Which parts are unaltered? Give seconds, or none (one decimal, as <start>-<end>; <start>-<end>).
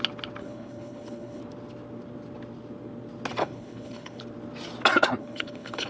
0.0-0.4; 1.4-3.4; 4.2-5.2